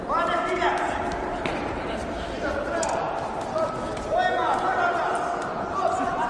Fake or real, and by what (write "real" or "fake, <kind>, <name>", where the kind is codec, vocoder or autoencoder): real